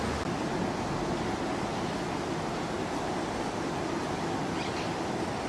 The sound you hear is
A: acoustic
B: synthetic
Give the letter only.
A